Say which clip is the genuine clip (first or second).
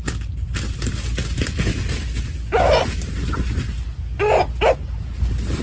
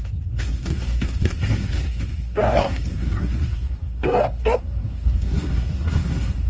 first